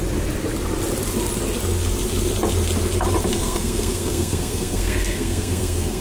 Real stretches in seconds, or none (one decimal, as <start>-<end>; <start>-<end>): 0.0-3.3